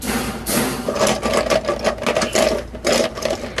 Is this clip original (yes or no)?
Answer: yes